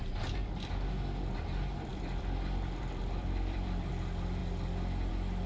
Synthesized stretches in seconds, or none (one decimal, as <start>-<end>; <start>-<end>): 1.9-3.9